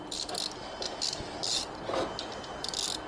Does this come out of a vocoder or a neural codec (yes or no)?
no